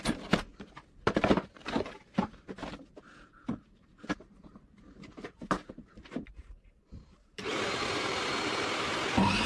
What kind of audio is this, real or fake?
fake